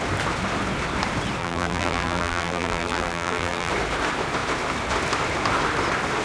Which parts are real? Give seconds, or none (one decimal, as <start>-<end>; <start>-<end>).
0.0-1.4; 3.7-6.2